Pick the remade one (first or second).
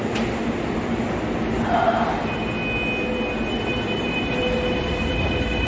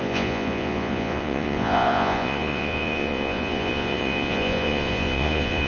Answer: second